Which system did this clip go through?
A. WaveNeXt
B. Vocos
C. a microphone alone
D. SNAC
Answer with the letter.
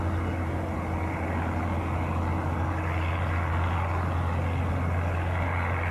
C